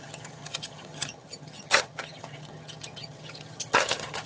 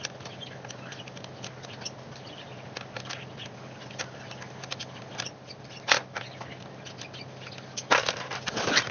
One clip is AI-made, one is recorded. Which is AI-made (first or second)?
first